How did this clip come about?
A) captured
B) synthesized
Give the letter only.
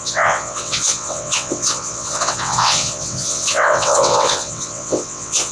B